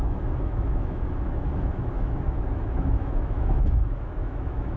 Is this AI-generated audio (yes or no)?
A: yes